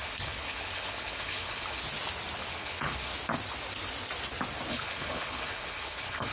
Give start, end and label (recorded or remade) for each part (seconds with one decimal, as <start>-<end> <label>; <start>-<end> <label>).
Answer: 0.0-1.8 remade; 1.8-2.5 recorded; 2.5-3.1 remade; 3.1-4.7 recorded; 4.7-6.3 remade